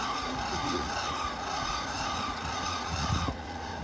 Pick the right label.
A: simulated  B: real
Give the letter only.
A